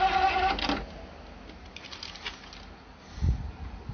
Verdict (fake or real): real